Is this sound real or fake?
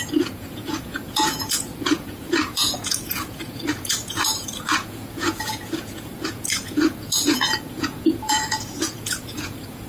fake